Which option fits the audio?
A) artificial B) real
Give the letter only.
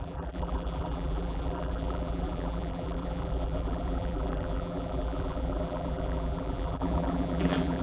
A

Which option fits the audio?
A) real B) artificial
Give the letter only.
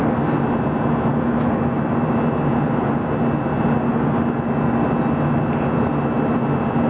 A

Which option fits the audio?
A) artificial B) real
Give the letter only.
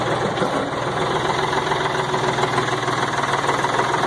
B